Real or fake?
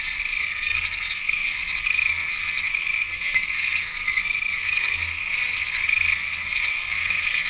fake